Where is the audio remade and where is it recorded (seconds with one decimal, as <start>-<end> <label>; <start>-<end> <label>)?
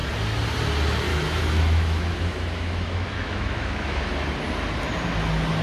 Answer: 0.0-1.1 recorded; 1.1-4.1 remade; 4.1-5.6 recorded